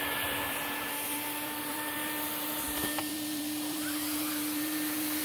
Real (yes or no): no